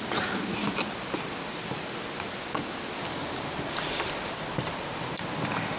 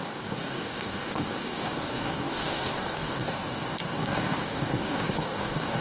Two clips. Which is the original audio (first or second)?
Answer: first